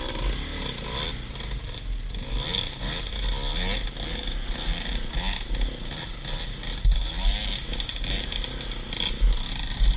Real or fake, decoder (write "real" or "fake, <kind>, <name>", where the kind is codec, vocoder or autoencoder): real